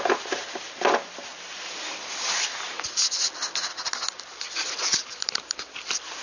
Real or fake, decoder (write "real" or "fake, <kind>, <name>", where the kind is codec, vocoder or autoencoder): fake, vocoder, BigVGAN v2